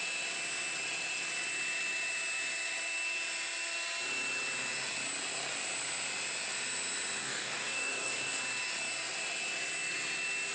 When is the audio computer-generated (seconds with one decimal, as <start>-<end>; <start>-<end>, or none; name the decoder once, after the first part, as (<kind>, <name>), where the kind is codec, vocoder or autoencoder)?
7.2-8.4 (codec, DAC)